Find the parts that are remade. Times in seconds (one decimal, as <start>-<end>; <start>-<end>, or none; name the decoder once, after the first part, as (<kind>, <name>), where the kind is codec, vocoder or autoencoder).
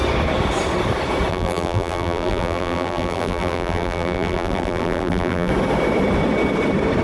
1.3-5.5 (vocoder, BigVGAN v2)